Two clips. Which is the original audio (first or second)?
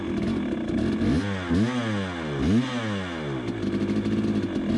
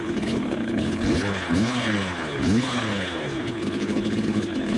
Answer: first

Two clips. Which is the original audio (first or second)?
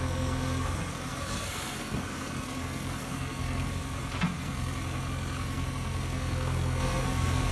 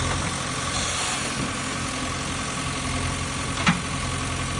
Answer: second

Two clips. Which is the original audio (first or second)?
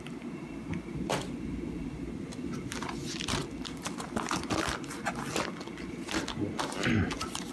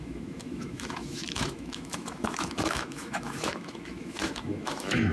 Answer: first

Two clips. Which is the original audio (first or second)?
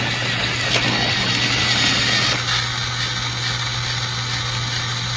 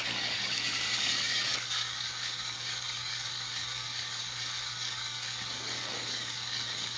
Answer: first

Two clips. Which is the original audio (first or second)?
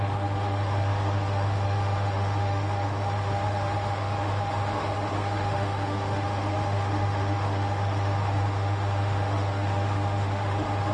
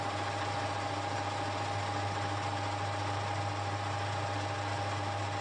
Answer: second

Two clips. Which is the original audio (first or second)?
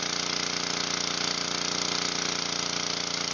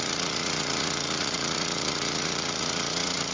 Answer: first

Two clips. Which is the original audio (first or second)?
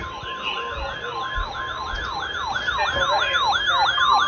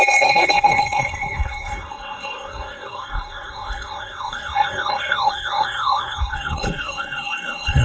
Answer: first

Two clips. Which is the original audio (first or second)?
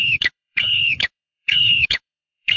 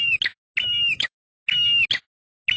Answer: second